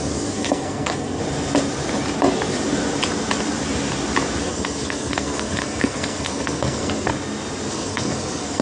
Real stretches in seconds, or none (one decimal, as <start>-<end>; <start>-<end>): 1.2-4.4; 7.1-7.7

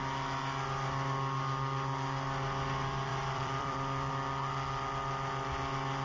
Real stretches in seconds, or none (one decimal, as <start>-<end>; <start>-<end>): 0.0-3.1; 4.1-6.0

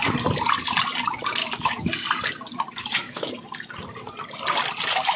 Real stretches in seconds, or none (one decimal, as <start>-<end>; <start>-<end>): 0.0-1.4; 1.9-2.8; 3.3-5.2